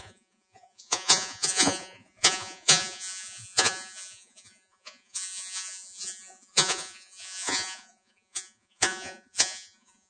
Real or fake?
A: fake